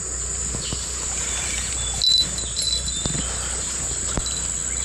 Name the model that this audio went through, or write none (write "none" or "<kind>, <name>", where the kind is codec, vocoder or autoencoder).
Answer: none